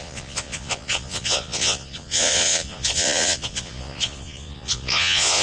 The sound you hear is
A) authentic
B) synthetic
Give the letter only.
B